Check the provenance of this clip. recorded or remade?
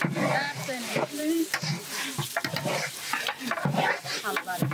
remade